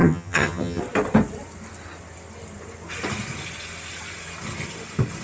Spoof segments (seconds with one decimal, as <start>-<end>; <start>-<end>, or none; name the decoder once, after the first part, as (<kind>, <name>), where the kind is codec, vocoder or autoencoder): 0.0-0.8 (vocoder, HiFi-GAN)